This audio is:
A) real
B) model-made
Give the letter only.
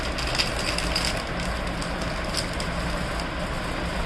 A